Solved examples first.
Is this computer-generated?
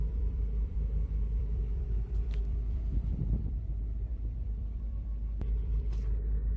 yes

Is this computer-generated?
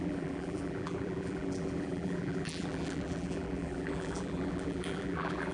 yes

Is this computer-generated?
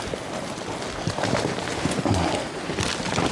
no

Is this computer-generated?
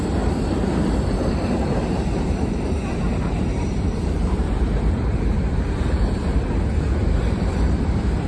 yes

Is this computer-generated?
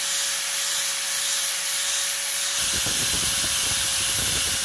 no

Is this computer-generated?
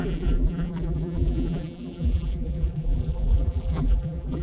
yes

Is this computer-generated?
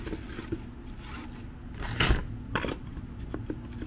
no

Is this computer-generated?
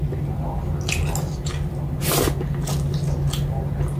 no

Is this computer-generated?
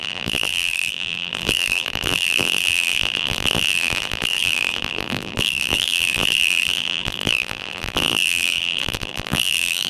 yes